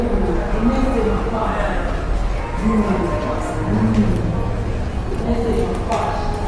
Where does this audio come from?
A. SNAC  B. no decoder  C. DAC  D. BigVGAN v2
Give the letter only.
B